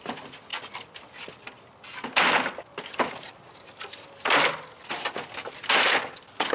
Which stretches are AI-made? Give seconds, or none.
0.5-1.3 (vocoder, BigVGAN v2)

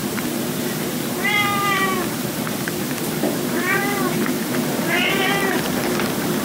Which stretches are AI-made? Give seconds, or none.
0.0-6.4 (vocoder, BigVGAN v2)

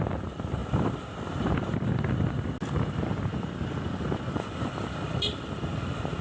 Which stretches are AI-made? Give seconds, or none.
none

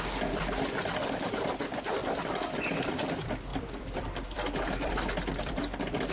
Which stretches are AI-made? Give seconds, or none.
2.0-3.1 (vocoder, BigVGAN v2); 3.5-5.6

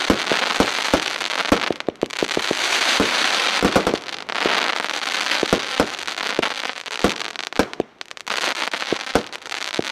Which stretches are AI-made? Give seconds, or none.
2.1-4.0 (vocoder, BigVGAN v2)

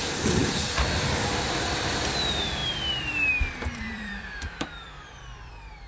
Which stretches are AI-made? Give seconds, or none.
0.0-0.4 (vocoder, BigVGAN v2); 1.3-2.6; 3.8-5.9

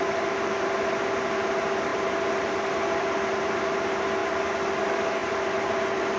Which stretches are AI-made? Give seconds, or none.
0.0-4.2 (vocoder, BigVGAN v2); 4.8-6.2

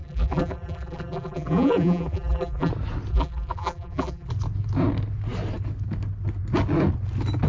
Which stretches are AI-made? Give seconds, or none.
0.0-2.7 (vocoder, BigVGAN v2); 3.1-4.3